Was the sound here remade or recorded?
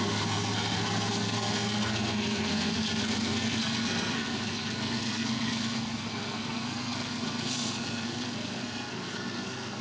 remade